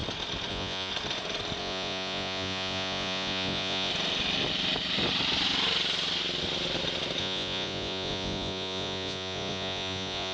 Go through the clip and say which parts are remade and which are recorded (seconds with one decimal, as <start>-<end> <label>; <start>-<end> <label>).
0.0-0.5 recorded; 0.5-0.9 remade; 0.9-1.6 recorded; 1.6-3.9 remade; 3.9-7.2 recorded; 7.2-10.3 remade